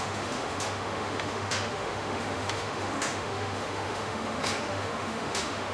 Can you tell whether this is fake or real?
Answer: fake